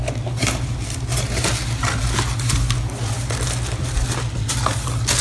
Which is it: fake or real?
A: real